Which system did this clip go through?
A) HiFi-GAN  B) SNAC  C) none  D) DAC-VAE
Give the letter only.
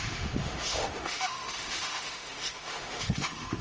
D